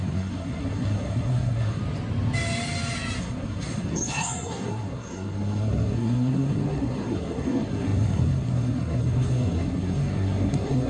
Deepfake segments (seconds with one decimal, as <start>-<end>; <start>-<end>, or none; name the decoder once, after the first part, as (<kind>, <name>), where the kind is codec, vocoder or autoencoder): 0.0-1.8 (codec, SNAC); 3.2-10.9